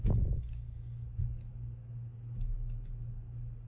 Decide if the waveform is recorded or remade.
recorded